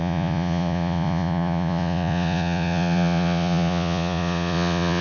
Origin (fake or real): fake